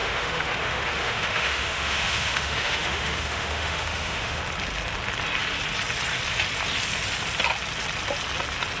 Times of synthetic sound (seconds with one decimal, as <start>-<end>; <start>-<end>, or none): 0.0-4.4